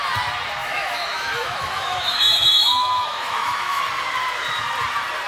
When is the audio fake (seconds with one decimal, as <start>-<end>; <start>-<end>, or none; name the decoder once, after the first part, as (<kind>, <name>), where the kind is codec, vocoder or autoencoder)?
0.6-3.8 (autoencoder, DAC-VAE)